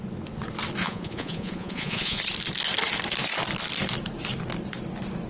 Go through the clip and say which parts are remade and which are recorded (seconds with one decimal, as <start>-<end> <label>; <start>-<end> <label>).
0.0-0.8 recorded; 0.8-2.2 remade; 2.2-5.3 recorded

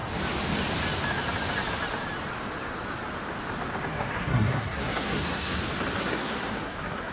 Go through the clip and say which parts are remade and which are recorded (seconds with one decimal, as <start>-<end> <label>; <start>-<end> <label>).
0.0-3.9 recorded; 3.9-5.6 remade; 5.6-6.0 recorded; 6.0-7.1 remade

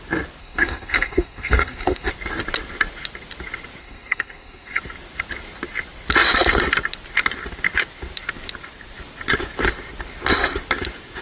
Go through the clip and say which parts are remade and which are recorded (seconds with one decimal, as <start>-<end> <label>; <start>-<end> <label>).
0.0-0.4 recorded; 0.4-2.1 remade; 2.1-3.8 recorded; 3.8-4.8 remade; 4.8-11.2 recorded

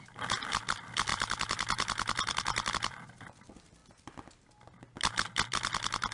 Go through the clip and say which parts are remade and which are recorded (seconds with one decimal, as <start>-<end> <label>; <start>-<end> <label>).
0.0-3.8 remade; 3.8-5.5 recorded; 5.5-6.1 remade

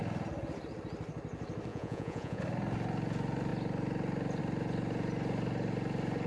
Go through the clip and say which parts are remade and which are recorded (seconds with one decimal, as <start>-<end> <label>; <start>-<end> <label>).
0.0-1.7 recorded; 1.7-2.4 remade; 2.4-6.3 recorded

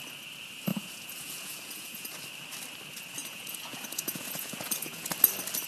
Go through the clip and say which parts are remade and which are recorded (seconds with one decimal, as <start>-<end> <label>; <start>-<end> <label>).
0.0-0.7 recorded; 0.7-2.2 remade; 2.2-3.2 recorded; 3.2-5.1 remade; 5.1-5.7 recorded